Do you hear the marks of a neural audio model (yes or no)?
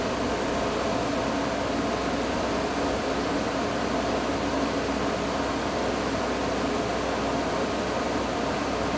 no